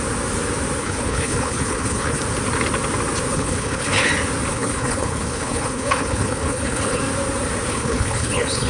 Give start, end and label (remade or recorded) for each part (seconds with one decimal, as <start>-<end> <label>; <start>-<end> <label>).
0.0-0.8 recorded; 0.8-2.2 remade; 2.2-3.3 recorded; 3.3-4.1 remade; 4.1-4.5 recorded; 4.5-7.0 remade; 7.0-7.7 recorded; 7.7-8.7 remade